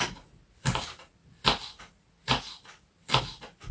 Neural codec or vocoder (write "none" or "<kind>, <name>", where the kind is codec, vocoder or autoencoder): none